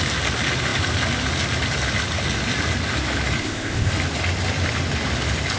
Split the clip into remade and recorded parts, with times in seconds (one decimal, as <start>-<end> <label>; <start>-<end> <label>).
0.0-3.4 recorded; 3.4-3.9 remade; 3.9-5.6 recorded